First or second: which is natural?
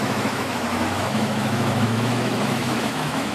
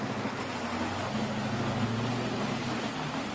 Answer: second